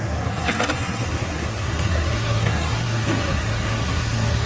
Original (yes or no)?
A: no